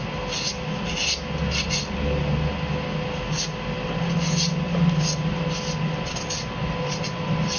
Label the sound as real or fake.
real